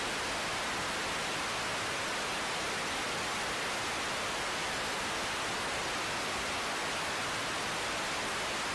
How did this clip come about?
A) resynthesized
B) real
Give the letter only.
B